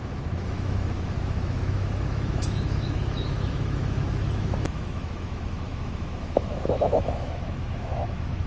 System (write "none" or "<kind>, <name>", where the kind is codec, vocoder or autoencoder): autoencoder, DAC-VAE